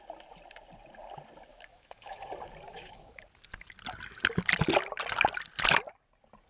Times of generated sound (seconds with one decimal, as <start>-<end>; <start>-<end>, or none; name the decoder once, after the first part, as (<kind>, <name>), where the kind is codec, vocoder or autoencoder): 1.5-2.3 (autoencoder, DAC-VAE); 2.7-3.2